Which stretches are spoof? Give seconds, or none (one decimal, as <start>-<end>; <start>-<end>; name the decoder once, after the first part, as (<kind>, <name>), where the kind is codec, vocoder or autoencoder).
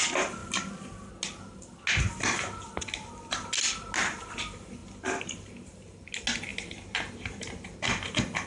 4.8-5.5 (vocoder, BigVGAN v2)